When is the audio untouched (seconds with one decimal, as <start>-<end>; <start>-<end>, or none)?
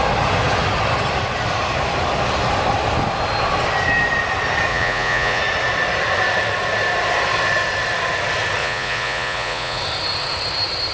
0.0-4.7; 5.4-8.6; 9.8-10.9